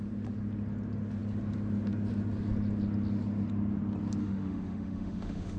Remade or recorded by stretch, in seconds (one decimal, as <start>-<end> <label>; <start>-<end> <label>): 0.0-4.2 recorded; 4.2-5.6 remade